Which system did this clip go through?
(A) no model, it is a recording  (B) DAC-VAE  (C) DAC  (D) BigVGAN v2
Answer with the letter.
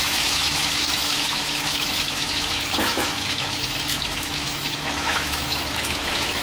B